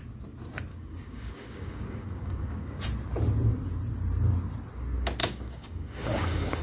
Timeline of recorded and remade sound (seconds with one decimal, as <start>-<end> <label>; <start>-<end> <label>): 0.0-0.7 recorded; 0.7-2.8 remade; 2.8-5.2 recorded; 5.2-6.6 remade